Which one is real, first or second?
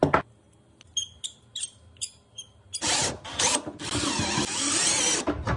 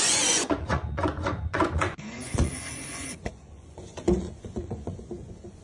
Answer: first